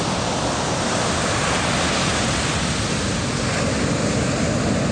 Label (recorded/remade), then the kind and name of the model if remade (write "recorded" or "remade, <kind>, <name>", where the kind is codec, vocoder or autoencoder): recorded